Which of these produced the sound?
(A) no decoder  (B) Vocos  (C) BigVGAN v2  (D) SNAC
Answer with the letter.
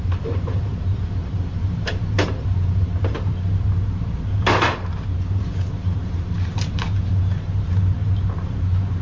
C